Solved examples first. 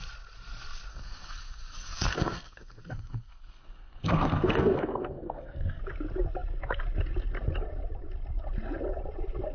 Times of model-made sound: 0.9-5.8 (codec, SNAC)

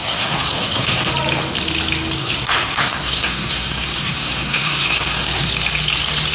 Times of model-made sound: 0.0-1.1 (codec, SNAC); 2.2-5.5

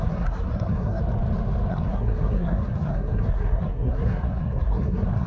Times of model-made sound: 0.0-1.0 (codec, SNAC); 1.7-5.3